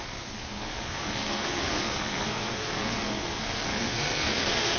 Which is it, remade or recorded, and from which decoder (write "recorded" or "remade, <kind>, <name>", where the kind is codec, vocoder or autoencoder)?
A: remade, codec, SNAC